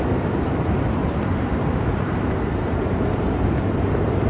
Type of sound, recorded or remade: remade